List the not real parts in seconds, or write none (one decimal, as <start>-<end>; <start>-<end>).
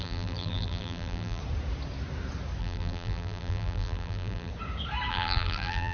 0.0-1.4; 2.6-4.5; 5.1-5.9